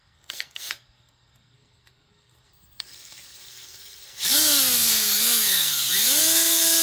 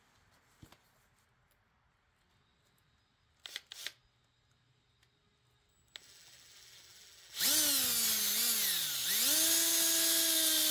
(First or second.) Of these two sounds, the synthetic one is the first